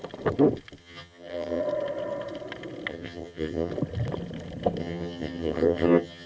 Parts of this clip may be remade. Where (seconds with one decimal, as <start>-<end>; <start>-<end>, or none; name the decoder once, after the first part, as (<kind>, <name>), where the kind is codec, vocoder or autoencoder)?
0.8-1.6 (vocoder, HiFi-GAN); 2.9-3.7; 4.8-6.3

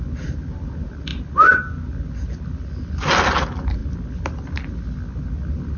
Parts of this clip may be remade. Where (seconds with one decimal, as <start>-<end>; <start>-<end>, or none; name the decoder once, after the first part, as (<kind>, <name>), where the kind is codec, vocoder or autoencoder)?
none